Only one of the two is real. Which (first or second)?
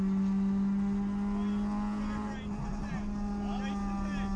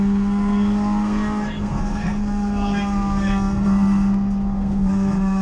first